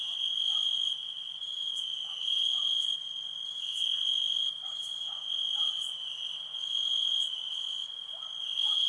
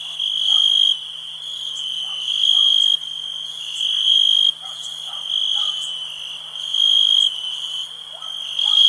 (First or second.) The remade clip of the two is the first